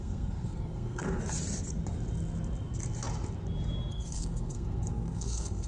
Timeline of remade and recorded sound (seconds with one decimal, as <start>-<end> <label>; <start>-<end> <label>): 0.0-1.2 remade; 1.2-3.9 recorded; 3.9-5.7 remade